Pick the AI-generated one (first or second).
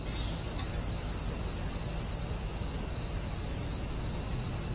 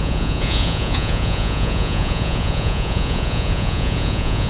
second